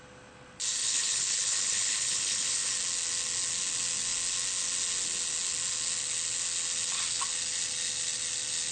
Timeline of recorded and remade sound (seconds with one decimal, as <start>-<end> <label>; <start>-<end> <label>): 0.0-0.8 recorded; 0.8-2.7 remade; 2.7-8.7 recorded